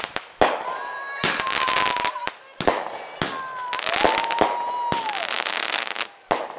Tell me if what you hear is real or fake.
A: real